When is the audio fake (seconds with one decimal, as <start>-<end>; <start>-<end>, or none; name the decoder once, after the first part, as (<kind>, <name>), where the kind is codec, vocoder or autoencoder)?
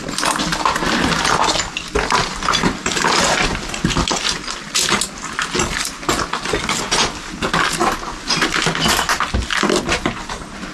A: none